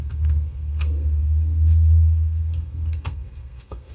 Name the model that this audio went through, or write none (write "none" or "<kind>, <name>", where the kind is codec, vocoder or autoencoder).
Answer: codec, SNAC